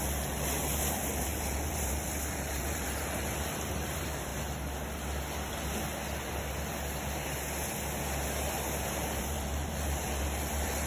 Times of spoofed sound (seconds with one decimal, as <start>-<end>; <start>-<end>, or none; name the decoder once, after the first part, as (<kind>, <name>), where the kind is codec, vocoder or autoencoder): 0.0-4.3 (vocoder, BigVGAN v2); 9.2-10.9